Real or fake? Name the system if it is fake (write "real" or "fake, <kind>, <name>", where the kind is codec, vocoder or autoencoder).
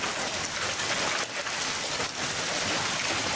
real